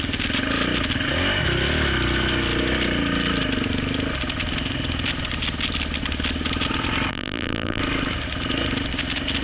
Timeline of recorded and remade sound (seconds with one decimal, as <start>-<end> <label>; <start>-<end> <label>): 0.0-7.1 recorded; 7.1-7.8 remade; 7.8-9.4 recorded